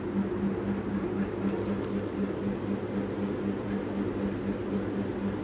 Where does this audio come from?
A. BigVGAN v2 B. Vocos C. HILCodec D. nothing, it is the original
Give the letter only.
D